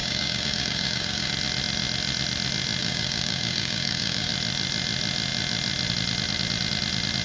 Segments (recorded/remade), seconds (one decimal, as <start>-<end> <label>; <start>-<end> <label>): 0.0-1.3 remade; 1.3-2.8 recorded; 2.8-4.3 remade; 4.3-7.2 recorded